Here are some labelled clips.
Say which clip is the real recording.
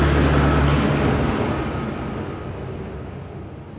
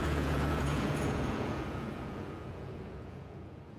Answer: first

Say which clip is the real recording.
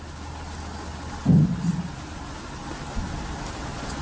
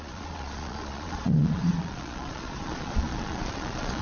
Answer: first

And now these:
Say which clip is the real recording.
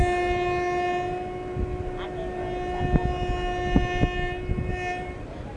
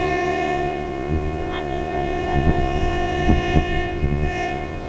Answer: first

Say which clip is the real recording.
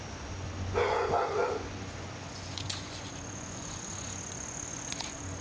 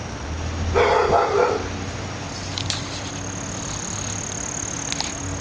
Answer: second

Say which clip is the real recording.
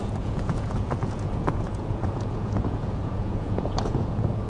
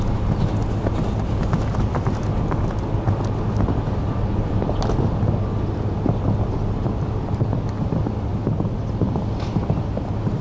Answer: second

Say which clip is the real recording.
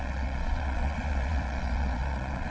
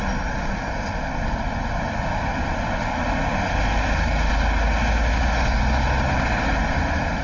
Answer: second